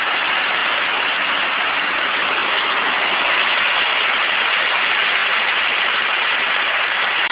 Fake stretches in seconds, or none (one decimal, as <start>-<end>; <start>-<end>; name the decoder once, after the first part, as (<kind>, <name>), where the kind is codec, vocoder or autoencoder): 0.0-0.6 (vocoder, BigVGAN v2); 1.7-2.4; 4.6-7.3